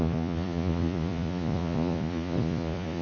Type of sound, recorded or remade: remade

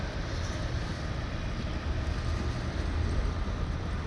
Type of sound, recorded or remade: recorded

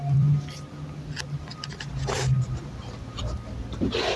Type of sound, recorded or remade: remade